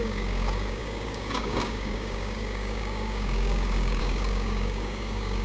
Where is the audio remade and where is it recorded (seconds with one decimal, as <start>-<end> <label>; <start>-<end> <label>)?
0.0-5.4 remade